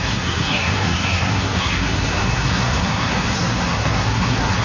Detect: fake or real fake